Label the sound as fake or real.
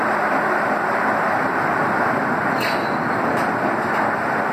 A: real